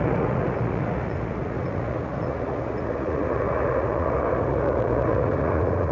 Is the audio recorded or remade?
remade